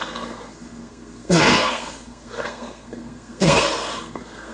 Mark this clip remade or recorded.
remade